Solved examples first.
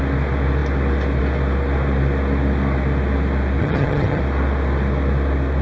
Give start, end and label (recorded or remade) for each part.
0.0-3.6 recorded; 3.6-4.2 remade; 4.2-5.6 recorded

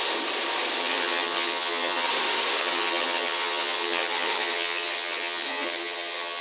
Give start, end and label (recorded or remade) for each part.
0.0-0.8 recorded; 0.8-2.1 remade; 2.1-2.6 recorded; 2.6-6.4 remade

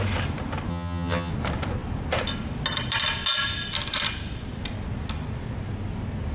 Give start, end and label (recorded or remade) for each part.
0.0-0.7 recorded; 0.7-1.3 remade; 1.3-6.3 recorded

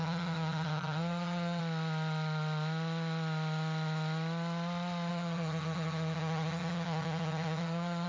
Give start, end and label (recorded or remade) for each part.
0.0-1.6 remade; 1.6-5.1 recorded; 5.1-8.1 remade

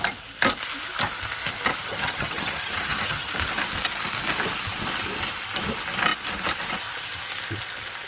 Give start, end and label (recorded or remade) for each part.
0.0-1.7 recorded; 1.7-3.3 remade; 3.3-8.1 recorded

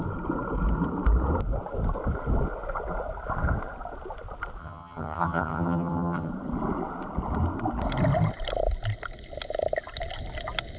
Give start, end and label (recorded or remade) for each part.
0.0-4.6 recorded; 4.6-6.3 remade; 6.3-10.8 recorded

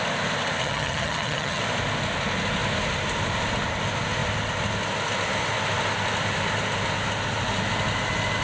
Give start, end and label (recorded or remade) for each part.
0.0-0.6 recorded; 0.6-1.6 remade; 1.6-8.4 recorded